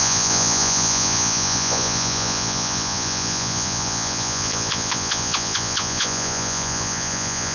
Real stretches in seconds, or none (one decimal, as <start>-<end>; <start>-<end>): none